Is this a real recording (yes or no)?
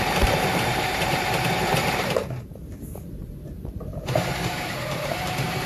no